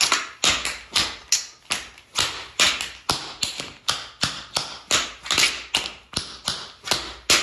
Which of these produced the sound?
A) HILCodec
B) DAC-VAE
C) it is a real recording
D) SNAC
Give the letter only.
C